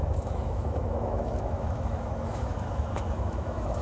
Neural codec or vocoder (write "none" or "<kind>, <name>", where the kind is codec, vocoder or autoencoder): autoencoder, DAC-VAE